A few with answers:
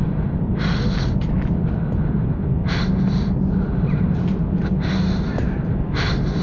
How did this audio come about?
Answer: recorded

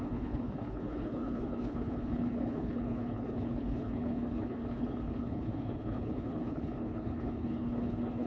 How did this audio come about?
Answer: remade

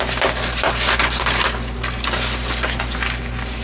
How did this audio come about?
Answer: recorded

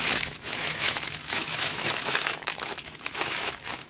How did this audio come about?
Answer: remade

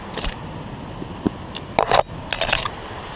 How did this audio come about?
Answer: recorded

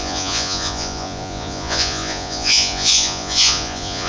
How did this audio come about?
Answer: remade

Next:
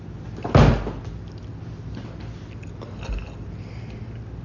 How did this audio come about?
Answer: recorded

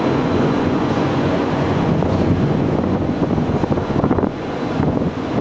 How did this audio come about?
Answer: remade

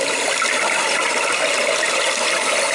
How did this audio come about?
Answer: recorded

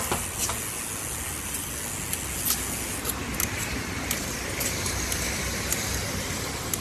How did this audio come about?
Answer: recorded